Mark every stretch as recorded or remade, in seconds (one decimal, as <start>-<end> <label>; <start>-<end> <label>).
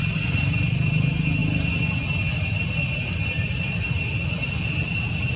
0.0-5.4 recorded